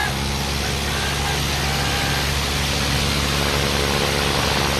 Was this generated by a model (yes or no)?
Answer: no